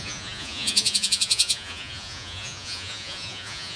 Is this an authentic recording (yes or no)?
no